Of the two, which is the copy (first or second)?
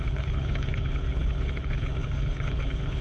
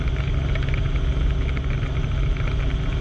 first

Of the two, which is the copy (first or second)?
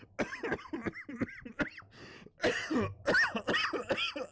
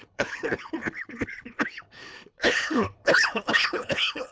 second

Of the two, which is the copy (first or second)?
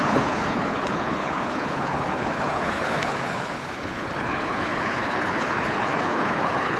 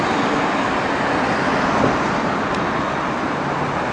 first